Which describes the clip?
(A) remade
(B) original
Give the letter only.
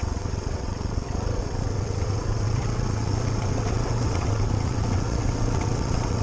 A